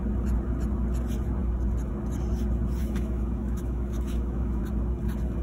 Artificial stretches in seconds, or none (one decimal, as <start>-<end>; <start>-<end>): 2.8-4.6